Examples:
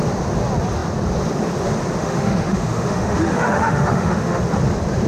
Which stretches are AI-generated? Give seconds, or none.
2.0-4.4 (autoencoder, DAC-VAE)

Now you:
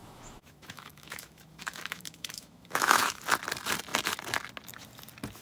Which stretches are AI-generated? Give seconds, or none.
0.0-3.2 (autoencoder, DAC-VAE)